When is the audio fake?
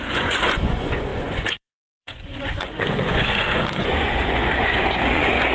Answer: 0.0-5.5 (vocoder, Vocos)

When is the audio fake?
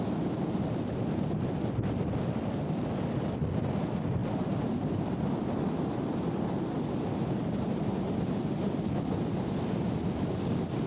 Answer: none